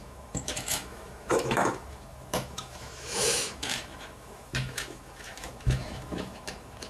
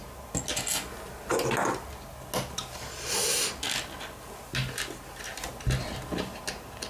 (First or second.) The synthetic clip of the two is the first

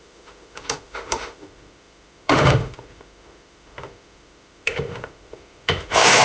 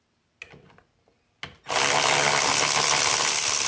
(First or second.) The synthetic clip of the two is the first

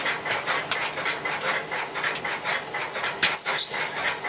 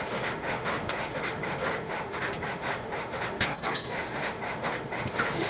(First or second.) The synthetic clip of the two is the second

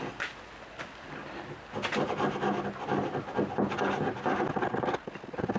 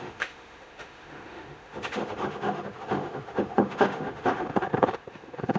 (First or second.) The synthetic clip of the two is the second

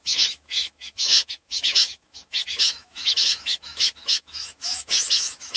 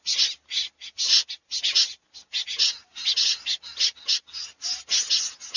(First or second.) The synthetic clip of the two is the first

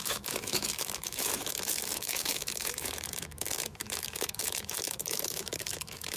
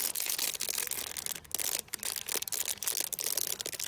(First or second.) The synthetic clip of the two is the first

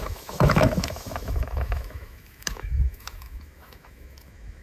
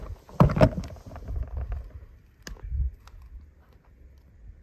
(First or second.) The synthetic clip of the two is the first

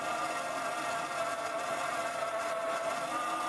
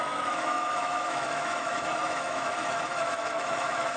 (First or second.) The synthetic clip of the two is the second